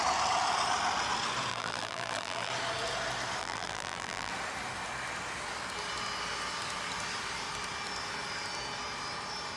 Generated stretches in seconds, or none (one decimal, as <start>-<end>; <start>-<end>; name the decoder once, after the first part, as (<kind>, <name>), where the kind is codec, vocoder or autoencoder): 1.5-2.5 (vocoder, BigVGAN v2); 3.4-4.3

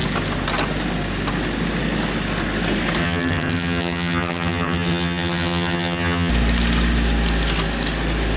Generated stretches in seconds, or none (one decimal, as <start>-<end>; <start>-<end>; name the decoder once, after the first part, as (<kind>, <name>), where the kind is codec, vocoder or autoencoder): 3.0-6.3 (vocoder, HiFi-GAN)

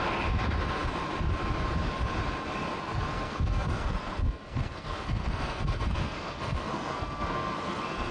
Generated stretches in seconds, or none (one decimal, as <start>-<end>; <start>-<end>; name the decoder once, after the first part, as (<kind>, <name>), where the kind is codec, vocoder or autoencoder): 2.8-8.1 (codec, SNAC)

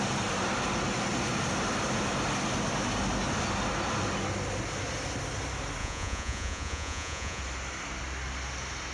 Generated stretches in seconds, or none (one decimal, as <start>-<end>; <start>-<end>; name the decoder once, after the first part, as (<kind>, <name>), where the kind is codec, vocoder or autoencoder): 5.8-7.4 (vocoder, Vocos)

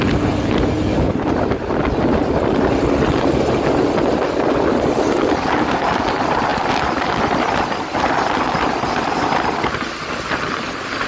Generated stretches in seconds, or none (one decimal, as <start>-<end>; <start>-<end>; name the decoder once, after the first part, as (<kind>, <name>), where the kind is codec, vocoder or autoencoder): 4.7-5.8 (vocoder, BigVGAN v2); 6.5-8.0